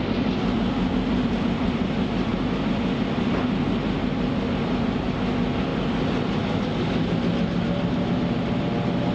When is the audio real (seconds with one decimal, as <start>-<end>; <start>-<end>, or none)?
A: 0.0-9.1